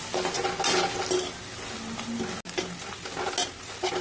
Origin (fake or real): real